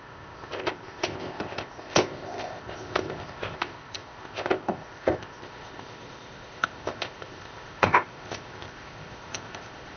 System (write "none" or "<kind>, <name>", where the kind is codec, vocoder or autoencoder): codec, ZipCodec